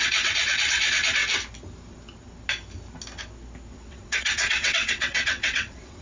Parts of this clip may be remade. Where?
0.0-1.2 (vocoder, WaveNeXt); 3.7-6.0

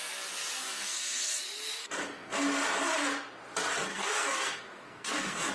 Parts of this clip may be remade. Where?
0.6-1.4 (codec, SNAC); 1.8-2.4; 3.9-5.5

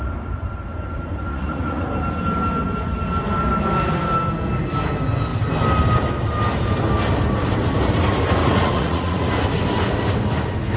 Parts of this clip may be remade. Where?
1.3-1.9 (vocoder, Vocos); 8.4-9.3

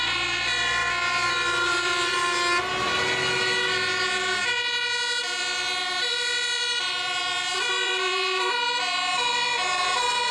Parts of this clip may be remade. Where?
0.0-0.8 (vocoder, BigVGAN v2); 1.3-2.2; 5.2-10.3

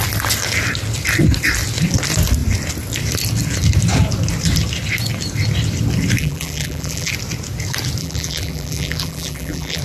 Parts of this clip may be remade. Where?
6.2-7.1 (vocoder, BigVGAN v2); 8.0-9.8

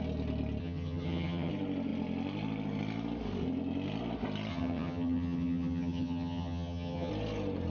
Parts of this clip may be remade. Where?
0.6-1.5 (vocoder, HiFi-GAN); 4.5-7.1